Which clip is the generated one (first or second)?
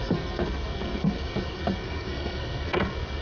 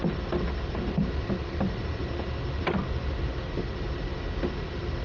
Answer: first